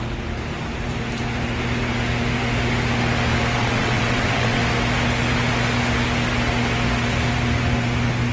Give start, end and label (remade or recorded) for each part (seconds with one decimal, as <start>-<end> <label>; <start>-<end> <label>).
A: 0.0-3.6 recorded; 3.6-4.6 remade; 4.6-8.3 recorded